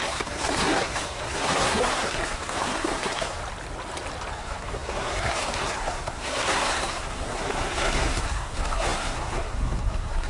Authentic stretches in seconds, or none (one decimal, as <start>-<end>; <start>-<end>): 3.4-4.3